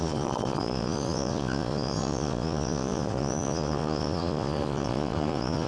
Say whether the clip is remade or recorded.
remade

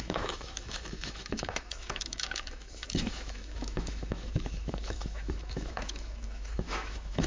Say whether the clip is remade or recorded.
remade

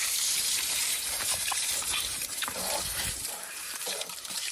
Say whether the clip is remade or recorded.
remade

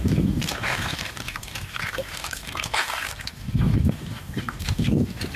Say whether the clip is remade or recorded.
remade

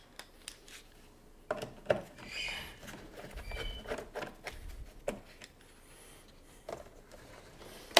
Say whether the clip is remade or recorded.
recorded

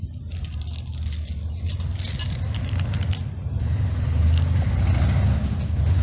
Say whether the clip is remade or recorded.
recorded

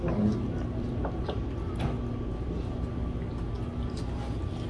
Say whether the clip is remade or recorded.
recorded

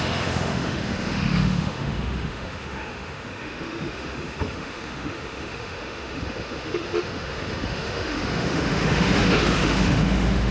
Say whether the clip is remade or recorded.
remade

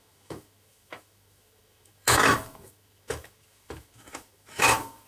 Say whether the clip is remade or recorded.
remade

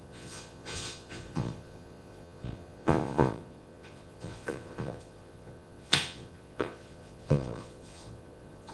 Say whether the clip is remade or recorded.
remade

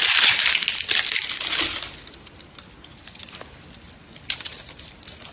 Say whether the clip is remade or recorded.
recorded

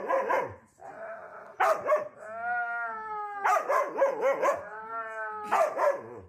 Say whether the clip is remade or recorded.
recorded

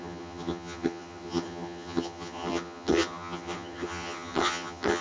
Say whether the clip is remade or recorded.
remade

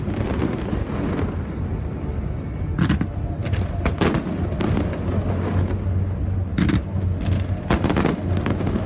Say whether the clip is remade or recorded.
recorded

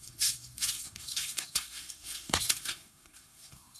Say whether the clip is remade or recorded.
remade